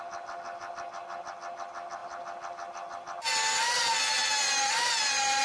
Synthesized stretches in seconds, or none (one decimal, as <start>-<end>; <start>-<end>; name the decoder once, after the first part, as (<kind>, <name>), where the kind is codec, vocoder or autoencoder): none